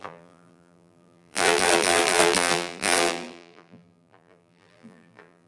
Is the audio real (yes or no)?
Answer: no